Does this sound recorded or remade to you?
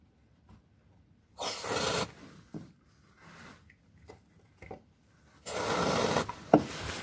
recorded